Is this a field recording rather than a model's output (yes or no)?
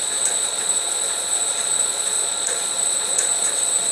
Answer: no